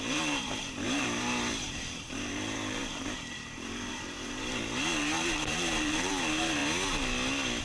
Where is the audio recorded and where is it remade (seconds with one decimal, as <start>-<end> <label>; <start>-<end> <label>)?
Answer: 0.0-6.6 remade; 6.6-7.6 recorded